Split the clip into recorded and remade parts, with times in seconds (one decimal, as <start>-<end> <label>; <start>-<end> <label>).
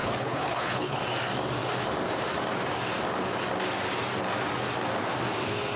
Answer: 0.0-1.0 remade; 1.0-5.8 recorded